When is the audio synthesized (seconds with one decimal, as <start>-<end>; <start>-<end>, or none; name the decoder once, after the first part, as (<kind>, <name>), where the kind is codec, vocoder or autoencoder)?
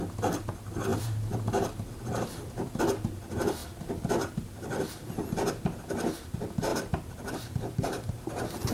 0.9-2.8 (vocoder, BigVGAN v2); 6.7-8.1